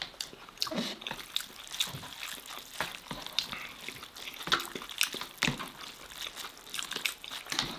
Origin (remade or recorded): recorded